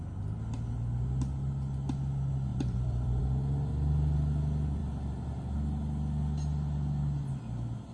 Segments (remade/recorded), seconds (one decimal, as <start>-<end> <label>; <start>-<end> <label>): 0.0-2.5 recorded; 2.5-3.2 remade; 3.2-7.9 recorded